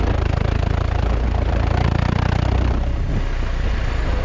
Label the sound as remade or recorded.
recorded